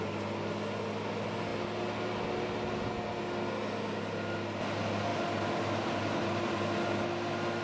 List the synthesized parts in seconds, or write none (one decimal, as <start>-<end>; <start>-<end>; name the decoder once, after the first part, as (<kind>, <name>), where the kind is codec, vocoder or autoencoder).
none